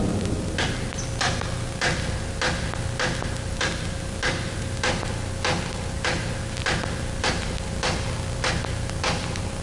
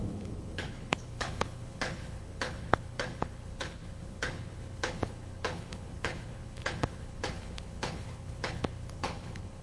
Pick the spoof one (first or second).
second